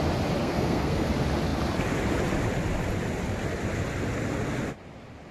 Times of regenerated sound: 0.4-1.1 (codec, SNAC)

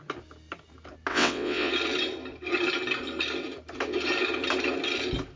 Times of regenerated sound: 1.1-1.7 (vocoder, WaveNeXt)

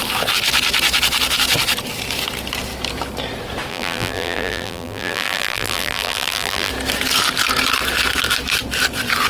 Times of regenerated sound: 3.7-6.7 (vocoder, BigVGAN v2)

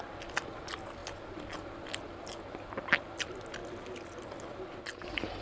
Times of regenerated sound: none

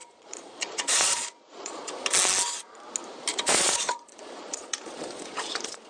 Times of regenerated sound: 0.0-1.9 (vocoder, Vocos); 3.3-5.9

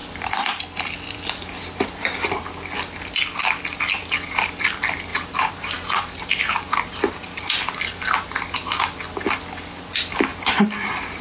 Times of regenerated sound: 5.1-7.4 (vocoder, BigVGAN v2); 10.3-11.2